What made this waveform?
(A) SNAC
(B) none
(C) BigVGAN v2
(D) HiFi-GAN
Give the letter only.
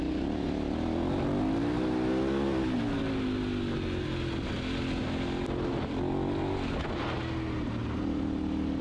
B